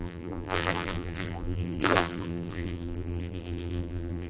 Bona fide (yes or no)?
no